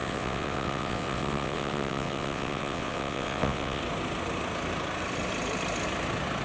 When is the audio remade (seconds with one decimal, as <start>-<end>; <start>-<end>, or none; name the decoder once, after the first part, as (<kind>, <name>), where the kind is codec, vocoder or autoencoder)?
0.0-3.8 (vocoder, WaveNeXt)